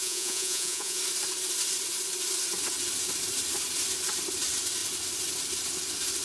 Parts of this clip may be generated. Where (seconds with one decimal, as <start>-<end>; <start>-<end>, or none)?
0.0-1.0